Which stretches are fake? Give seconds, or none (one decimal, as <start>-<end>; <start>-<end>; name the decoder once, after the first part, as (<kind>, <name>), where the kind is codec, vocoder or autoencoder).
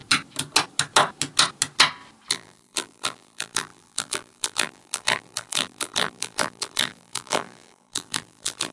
2.3-8.7 (vocoder, BigVGAN v2)